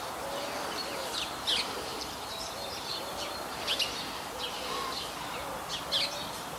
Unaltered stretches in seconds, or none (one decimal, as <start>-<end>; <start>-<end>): 0.0-1.9; 3.6-6.6